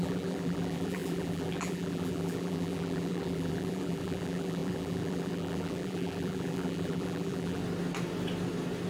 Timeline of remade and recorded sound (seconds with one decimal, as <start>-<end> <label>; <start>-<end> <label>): 0.0-7.6 remade; 7.6-8.9 recorded